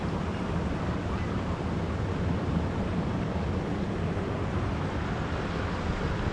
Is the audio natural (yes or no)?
yes